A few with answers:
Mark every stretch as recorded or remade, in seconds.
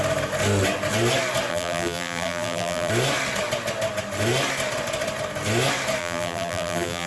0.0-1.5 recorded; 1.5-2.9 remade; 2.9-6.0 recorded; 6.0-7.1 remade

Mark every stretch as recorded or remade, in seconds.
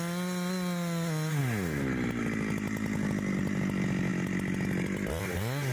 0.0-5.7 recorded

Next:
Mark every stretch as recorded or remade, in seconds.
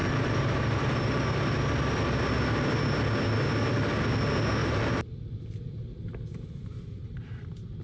0.0-1.2 remade; 1.2-4.6 recorded; 4.6-7.8 remade